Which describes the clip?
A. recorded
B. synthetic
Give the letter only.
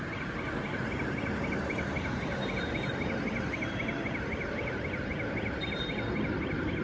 A